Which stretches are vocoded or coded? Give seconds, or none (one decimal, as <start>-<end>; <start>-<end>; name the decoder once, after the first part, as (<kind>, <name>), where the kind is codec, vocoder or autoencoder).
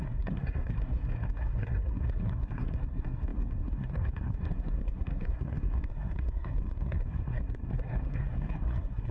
0.0-9.1 (codec, SNAC)